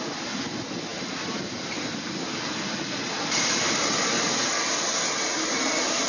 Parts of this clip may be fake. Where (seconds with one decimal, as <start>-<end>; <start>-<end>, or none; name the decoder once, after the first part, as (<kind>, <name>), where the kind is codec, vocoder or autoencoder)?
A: none